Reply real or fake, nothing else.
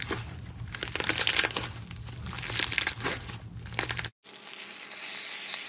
real